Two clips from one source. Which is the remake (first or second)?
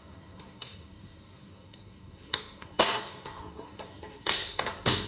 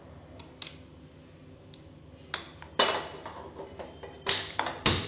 first